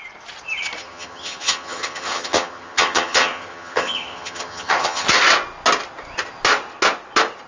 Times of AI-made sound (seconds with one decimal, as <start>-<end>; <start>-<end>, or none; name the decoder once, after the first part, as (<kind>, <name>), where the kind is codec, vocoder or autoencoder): 0.8-5.2 (vocoder, HiFi-GAN)